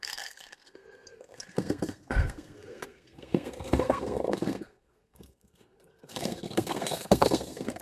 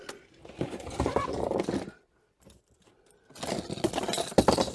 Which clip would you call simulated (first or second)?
first